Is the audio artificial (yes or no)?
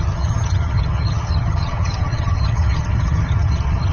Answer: yes